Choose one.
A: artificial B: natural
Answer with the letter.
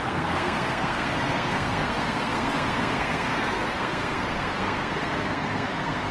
A